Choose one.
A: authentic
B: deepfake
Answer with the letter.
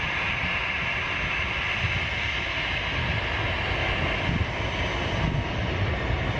A